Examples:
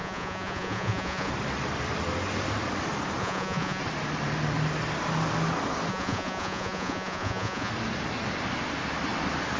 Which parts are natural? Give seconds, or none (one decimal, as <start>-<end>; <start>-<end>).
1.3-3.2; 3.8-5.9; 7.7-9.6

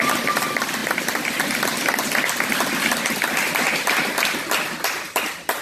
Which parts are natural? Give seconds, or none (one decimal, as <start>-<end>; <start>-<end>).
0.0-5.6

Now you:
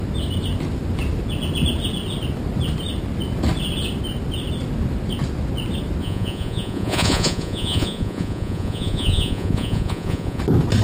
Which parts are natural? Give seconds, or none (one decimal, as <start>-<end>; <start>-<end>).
0.0-6.0; 10.4-10.8

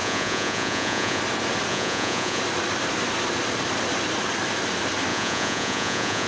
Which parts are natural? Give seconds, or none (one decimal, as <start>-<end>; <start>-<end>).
1.2-1.7; 2.4-5.1